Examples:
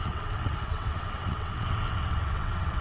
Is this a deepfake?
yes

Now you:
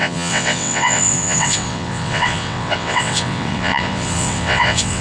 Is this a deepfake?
yes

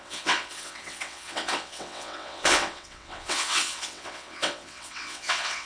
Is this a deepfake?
yes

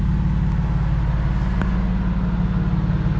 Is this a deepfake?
no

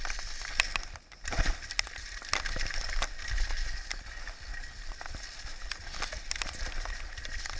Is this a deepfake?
no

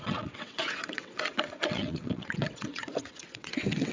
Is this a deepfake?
yes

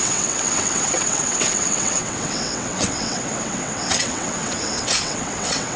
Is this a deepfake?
yes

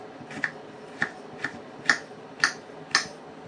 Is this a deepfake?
no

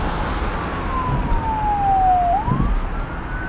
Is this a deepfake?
no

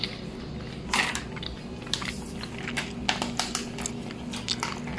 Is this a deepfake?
no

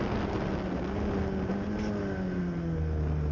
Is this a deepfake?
no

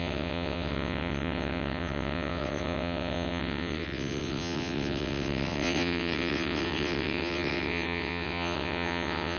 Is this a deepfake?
yes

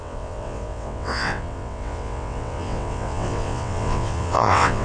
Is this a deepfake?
yes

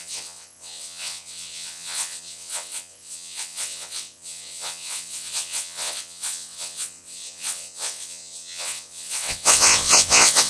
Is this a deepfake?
yes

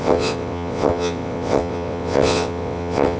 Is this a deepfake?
yes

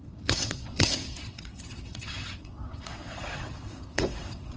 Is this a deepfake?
yes